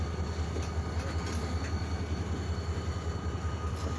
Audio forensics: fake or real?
real